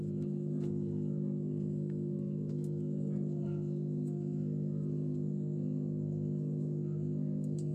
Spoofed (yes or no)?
yes